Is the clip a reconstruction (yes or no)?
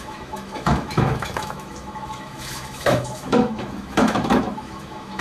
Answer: yes